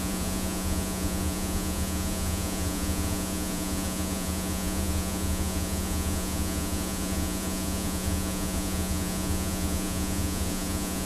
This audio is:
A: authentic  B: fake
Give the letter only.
B